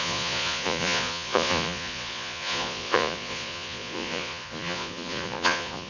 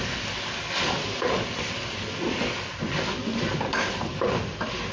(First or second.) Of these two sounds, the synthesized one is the first